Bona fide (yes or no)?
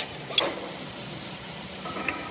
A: yes